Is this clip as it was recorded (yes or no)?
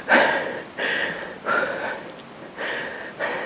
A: yes